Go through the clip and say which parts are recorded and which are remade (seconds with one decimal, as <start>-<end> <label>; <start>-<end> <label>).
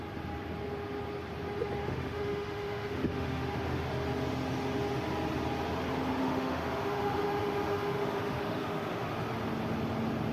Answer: 0.0-1.8 recorded; 1.8-3.9 remade; 3.9-6.2 recorded; 6.2-9.1 remade; 9.1-10.3 recorded